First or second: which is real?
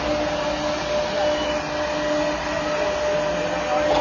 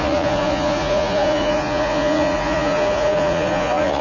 first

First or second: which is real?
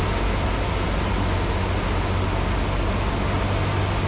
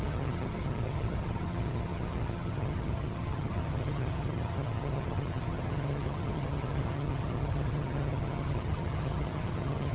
first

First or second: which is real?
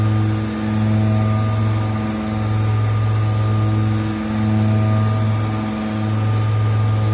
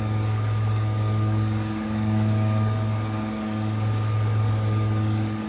first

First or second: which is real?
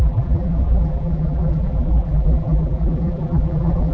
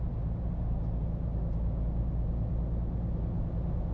second